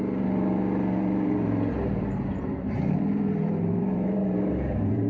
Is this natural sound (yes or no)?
no